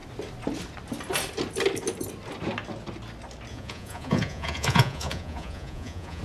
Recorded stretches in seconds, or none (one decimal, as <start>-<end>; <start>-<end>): 0.0-3.5